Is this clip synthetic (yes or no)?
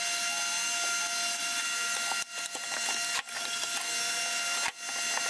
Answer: no